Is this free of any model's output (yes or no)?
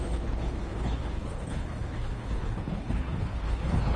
no